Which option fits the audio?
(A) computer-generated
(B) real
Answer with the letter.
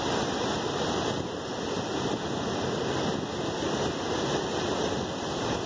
B